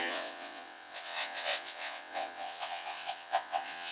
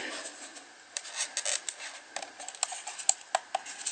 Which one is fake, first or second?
first